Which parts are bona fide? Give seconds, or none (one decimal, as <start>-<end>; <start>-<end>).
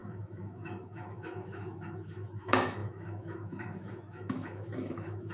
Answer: none